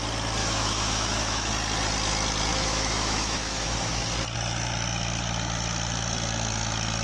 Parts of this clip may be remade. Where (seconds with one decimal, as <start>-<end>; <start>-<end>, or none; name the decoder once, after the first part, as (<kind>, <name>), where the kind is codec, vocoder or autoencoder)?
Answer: 0.4-1.5 (autoencoder, DAC-VAE); 2.5-4.0